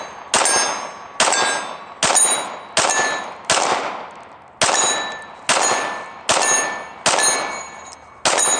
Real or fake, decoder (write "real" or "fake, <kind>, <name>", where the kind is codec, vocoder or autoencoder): real